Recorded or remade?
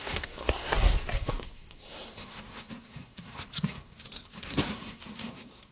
remade